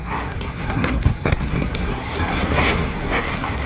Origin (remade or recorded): remade